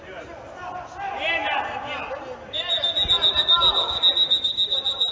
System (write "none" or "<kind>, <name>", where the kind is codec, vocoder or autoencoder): none